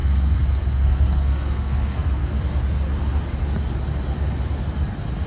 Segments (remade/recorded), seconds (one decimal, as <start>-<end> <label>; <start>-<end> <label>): 0.0-2.3 remade; 2.3-5.3 recorded

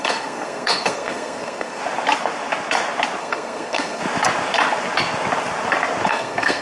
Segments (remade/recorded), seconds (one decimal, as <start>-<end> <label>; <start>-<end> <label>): 0.0-1.8 remade; 1.8-3.2 recorded; 3.2-4.0 remade; 4.0-6.1 recorded; 6.1-6.6 remade

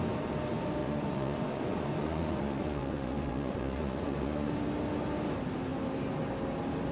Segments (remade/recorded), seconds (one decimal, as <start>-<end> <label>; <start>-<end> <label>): 0.0-0.8 recorded; 0.8-4.5 remade; 4.5-6.9 recorded

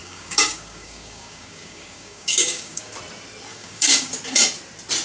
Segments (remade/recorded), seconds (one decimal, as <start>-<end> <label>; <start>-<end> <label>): 0.0-2.9 remade; 2.9-3.5 recorded; 3.5-4.1 remade; 4.1-5.0 recorded